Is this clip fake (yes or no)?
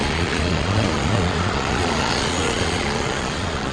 yes